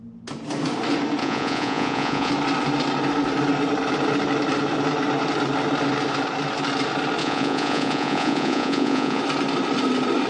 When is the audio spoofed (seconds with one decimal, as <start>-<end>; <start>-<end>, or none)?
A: 1.2-2.3; 7.2-9.2